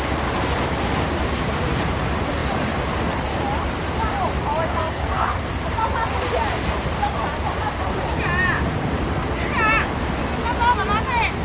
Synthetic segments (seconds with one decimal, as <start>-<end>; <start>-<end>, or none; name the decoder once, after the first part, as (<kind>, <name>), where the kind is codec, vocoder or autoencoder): 4.8-5.5 (codec, SNAC)